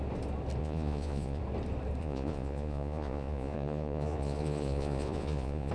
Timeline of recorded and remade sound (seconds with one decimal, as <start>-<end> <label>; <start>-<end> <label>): 0.0-0.6 recorded; 0.6-1.4 remade; 1.4-2.0 recorded; 2.0-5.7 remade